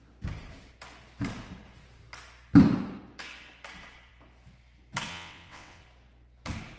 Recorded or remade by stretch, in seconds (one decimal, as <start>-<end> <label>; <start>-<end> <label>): 0.0-5.1 recorded; 5.1-5.8 remade; 5.8-6.8 recorded